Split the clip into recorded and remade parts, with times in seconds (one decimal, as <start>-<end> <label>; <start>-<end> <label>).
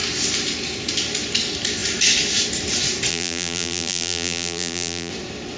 0.0-3.1 recorded; 3.1-5.1 remade; 5.1-5.6 recorded